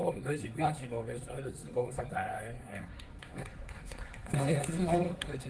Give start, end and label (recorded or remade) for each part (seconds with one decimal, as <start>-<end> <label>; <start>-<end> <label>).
0.0-5.5 remade